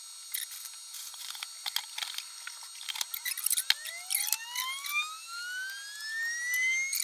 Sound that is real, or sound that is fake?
real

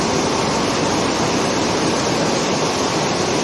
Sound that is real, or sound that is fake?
fake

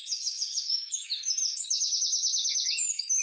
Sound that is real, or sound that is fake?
fake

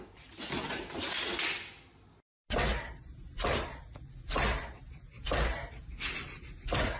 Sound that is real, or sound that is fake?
real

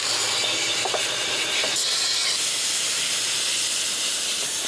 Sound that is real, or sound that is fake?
real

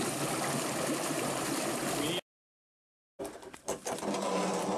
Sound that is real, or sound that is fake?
real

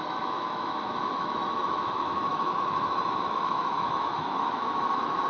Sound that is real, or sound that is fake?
fake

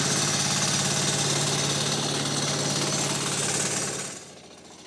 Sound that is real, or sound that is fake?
real